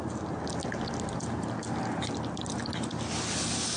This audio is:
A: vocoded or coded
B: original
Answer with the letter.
B